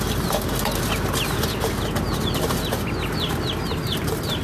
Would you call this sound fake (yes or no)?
no